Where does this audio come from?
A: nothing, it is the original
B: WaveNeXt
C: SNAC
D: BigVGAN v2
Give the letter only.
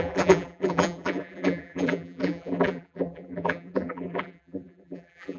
D